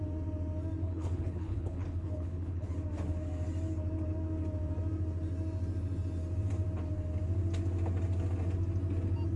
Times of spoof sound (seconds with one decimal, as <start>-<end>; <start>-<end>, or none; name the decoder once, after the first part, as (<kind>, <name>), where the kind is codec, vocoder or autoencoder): 0.8-2.7 (codec, HILCodec)